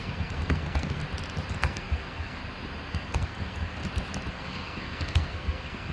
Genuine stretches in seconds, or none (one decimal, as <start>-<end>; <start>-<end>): 1.0-1.5; 2.4-2.9; 3.8-4.3